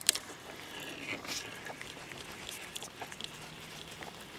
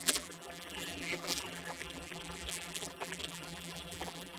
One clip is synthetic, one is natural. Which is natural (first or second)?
first